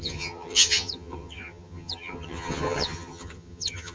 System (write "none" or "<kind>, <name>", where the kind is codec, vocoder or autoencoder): vocoder, HiFi-GAN